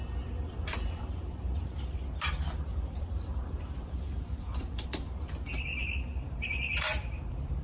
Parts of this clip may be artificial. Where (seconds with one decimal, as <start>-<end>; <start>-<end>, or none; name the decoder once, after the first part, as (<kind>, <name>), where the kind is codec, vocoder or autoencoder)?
0.7-5.2 (vocoder, BigVGAN v2); 5.7-7.6